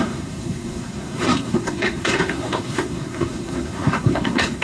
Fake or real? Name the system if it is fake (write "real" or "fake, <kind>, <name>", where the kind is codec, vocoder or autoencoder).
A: fake, codec, SNAC